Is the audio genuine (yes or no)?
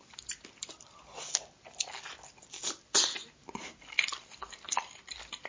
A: yes